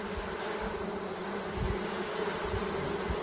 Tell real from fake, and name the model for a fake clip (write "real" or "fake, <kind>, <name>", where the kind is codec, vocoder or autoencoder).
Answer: real